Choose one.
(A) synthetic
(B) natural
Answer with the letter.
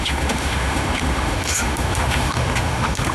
A